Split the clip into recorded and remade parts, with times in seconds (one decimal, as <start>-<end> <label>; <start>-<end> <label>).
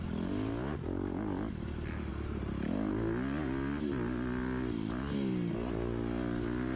0.0-6.8 recorded